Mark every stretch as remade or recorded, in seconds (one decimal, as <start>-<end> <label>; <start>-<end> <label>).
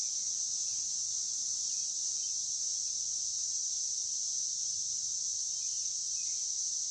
0.0-1.0 recorded; 1.0-1.9 remade; 1.9-3.1 recorded; 3.1-5.3 remade; 5.3-6.9 recorded